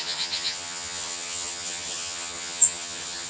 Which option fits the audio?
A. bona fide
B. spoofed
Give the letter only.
B